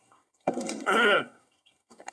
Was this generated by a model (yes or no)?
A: yes